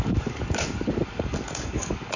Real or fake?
fake